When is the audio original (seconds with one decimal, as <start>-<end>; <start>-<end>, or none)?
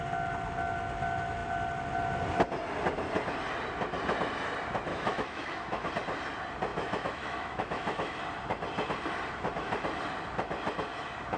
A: 0.0-4.9; 5.9-6.7; 8.2-11.4